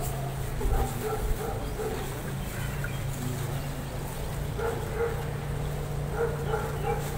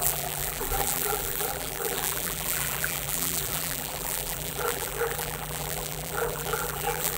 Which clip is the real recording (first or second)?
first